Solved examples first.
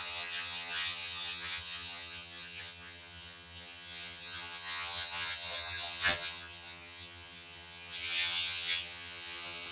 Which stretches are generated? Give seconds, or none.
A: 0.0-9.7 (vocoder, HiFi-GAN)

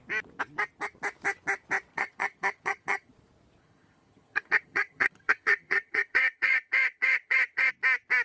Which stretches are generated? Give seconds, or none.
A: 1.9-3.1 (vocoder, HiFi-GAN); 3.6-7.7

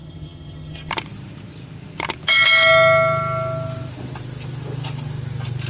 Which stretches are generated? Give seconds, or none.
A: 0.0-0.9 (vocoder, HiFi-GAN)

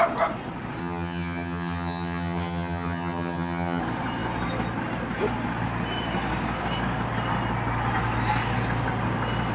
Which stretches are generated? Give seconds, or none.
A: 0.8-3.8 (vocoder, HiFi-GAN)

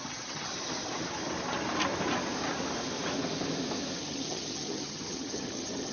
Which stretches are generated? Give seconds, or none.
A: 0.0-0.5 (vocoder, HiFi-GAN); 4.0-5.9

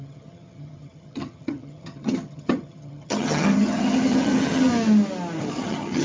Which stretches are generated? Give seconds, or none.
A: 0.0-4.7 (vocoder, HiFi-GAN); 5.4-6.0

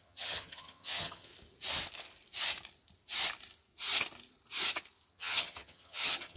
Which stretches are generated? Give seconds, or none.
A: 0.0-1.3 (vocoder, HiFi-GAN); 5.1-6.4

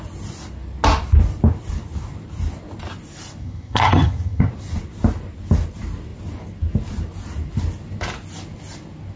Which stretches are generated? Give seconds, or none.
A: 3.4-4.5 (vocoder, HiFi-GAN)